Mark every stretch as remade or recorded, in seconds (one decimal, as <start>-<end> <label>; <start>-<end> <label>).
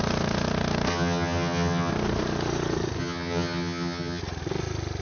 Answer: 0.0-0.9 recorded; 0.9-1.9 remade; 1.9-3.0 recorded; 3.0-4.2 remade; 4.2-5.0 recorded